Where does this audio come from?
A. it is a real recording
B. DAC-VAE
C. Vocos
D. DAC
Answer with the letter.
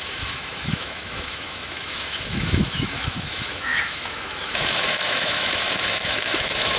B